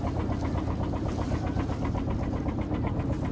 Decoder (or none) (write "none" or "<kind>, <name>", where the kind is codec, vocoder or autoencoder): none